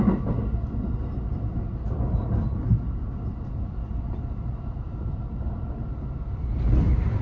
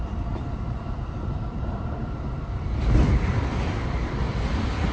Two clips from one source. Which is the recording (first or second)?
first